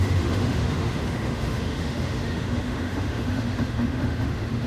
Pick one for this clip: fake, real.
fake